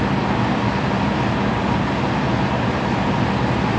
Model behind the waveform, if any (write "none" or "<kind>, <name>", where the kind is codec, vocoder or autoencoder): none